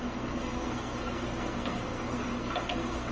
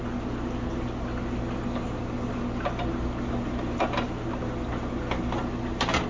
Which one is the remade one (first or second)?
first